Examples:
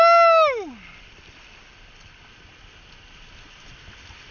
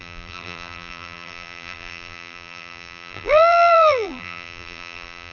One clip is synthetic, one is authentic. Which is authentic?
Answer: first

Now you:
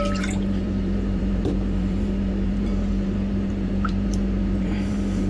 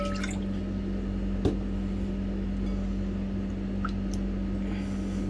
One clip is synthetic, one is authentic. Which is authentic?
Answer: second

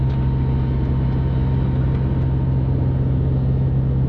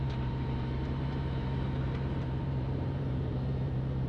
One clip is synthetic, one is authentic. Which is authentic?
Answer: first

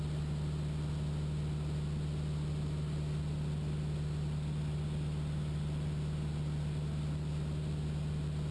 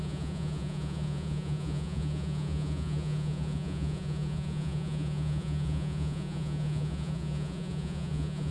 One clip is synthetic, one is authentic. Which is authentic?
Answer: first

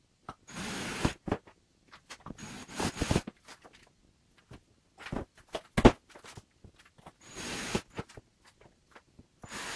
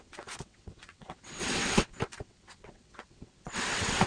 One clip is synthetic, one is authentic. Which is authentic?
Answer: first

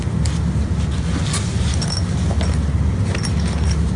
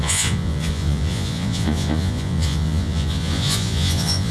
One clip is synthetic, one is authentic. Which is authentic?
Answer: first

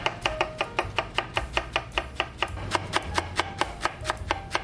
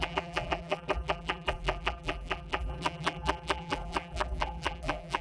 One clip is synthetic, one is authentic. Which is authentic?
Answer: first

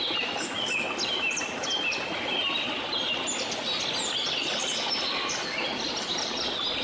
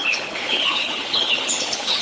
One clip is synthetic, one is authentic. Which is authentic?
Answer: first